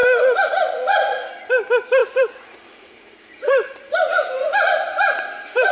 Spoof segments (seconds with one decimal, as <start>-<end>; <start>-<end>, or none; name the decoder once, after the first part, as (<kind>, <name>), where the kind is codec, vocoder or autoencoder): 0.0-1.3 (vocoder, Vocos); 2.0-5.7

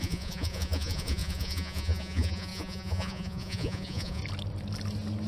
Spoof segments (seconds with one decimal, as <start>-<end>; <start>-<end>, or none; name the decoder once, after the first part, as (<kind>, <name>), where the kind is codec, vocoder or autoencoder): 0.0-4.2 (vocoder, Vocos)